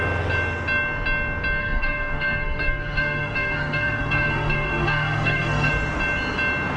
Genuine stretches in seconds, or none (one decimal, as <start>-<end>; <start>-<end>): 0.0-1.6; 5.7-6.8